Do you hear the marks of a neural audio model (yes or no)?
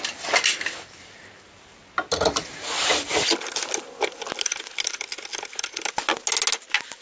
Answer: no